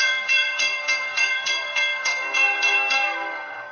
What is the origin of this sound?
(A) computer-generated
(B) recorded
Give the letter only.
A